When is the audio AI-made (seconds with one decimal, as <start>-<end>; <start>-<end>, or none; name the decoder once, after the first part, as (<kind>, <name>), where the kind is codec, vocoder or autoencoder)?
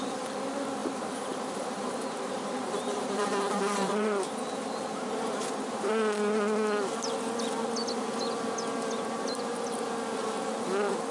0.8-5.9 (vocoder, BigVGAN v2)